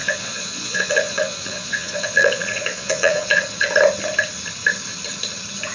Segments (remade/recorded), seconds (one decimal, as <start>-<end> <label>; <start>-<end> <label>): 0.0-3.4 remade; 3.4-5.7 recorded